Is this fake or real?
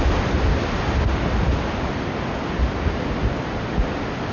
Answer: real